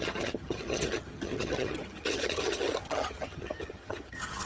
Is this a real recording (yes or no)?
no